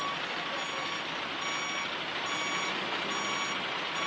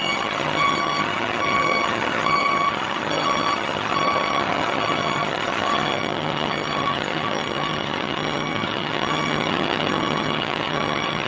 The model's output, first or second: second